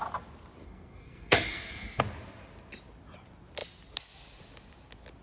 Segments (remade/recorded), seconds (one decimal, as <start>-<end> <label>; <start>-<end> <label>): 0.0-0.6 recorded; 0.6-2.0 remade; 2.0-5.2 recorded